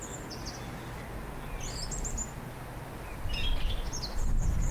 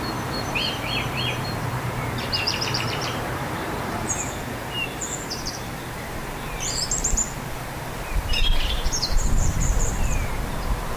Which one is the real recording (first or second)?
first